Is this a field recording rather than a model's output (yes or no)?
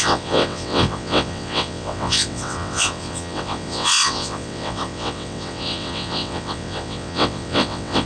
no